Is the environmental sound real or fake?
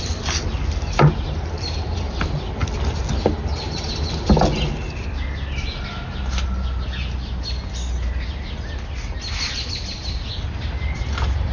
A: real